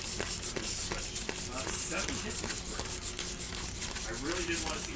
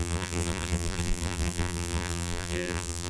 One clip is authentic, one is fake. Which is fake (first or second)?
second